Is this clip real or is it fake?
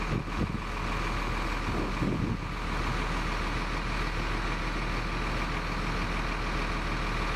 real